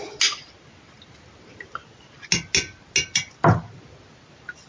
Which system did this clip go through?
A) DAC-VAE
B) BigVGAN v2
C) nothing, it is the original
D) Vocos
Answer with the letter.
C